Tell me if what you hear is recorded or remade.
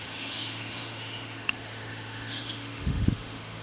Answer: remade